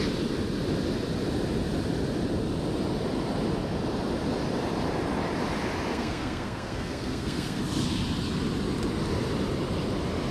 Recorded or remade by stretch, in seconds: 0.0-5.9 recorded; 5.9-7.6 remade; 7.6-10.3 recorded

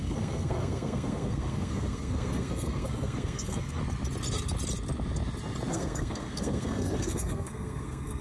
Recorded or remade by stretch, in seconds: 0.0-3.8 remade; 3.8-5.7 recorded; 5.7-8.2 remade

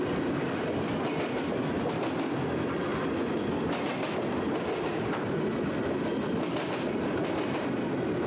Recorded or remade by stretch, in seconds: 0.0-8.3 recorded